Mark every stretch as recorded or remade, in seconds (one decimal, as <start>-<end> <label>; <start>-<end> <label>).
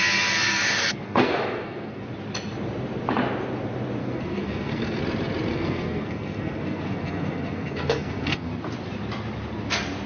0.0-0.5 recorded; 0.5-2.0 remade; 2.0-4.0 recorded; 4.0-5.0 remade; 5.0-5.5 recorded; 5.5-8.5 remade; 8.5-10.1 recorded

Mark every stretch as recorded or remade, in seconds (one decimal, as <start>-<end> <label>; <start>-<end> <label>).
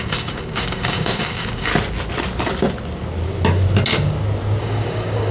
0.0-1.7 remade; 1.7-4.6 recorded; 4.6-5.3 remade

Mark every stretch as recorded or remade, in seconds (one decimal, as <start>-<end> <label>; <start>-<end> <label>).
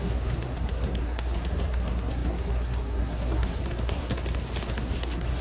0.0-4.2 remade; 4.2-4.7 recorded; 4.7-5.4 remade